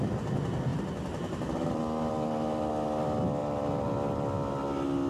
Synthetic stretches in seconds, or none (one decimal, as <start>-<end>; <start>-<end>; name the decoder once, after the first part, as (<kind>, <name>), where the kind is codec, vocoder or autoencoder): 3.4-3.9 (vocoder, BigVGAN v2)